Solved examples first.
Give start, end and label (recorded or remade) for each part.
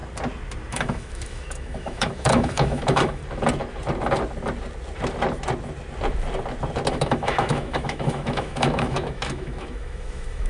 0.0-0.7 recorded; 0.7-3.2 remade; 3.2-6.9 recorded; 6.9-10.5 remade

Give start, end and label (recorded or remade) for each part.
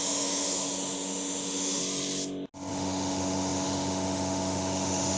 0.0-1.8 remade; 1.8-2.7 recorded; 2.7-5.2 remade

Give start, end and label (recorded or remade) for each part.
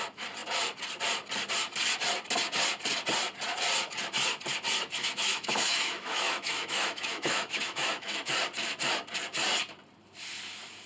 0.0-5.0 recorded; 5.0-8.3 remade; 8.3-10.9 recorded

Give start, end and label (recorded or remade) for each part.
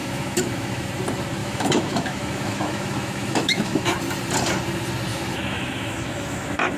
0.0-0.9 remade; 0.9-1.4 recorded; 1.4-3.9 remade; 3.9-5.1 recorded; 5.1-6.8 remade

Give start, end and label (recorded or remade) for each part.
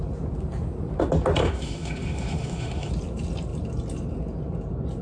0.0-1.4 recorded; 1.4-2.9 remade; 2.9-5.0 recorded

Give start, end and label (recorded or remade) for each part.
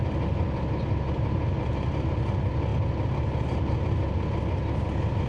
0.0-5.3 recorded